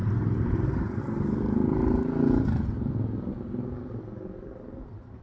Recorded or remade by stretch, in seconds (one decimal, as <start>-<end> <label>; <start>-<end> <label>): 0.0-1.0 remade; 1.0-5.2 recorded

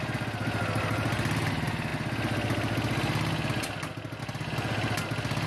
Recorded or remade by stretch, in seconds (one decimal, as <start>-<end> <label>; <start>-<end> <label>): 0.0-5.5 recorded

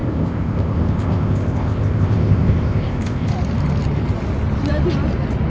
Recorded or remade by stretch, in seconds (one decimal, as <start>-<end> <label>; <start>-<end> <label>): 0.0-3.3 remade; 3.3-5.5 recorded

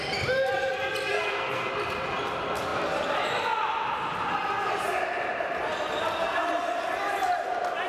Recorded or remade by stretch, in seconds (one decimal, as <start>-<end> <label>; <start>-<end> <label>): 0.0-1.1 recorded; 1.1-1.7 remade; 1.7-7.9 recorded